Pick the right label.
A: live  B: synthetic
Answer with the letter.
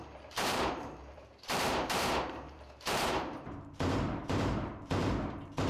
B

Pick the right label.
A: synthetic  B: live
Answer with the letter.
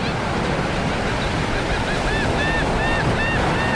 B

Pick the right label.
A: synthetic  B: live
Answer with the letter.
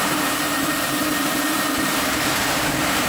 A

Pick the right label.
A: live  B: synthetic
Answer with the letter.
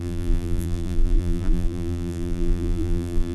B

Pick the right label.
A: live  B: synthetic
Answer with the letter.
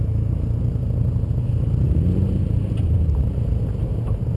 B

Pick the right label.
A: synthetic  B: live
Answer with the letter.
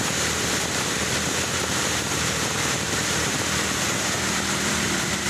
A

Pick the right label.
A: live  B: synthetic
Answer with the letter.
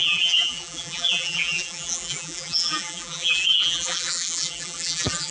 B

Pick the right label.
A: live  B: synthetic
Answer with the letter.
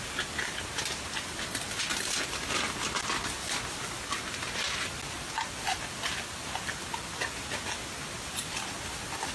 A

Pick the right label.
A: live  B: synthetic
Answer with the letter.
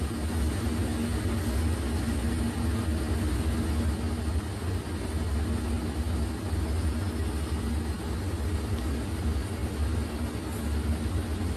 A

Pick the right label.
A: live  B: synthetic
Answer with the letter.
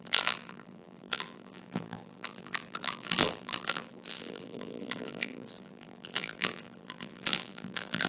B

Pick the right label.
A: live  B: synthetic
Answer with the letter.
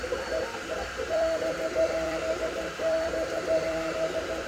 B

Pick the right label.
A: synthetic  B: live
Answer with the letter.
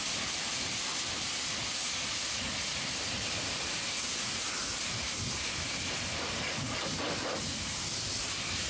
A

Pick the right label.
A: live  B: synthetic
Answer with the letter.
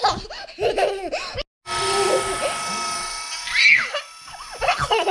A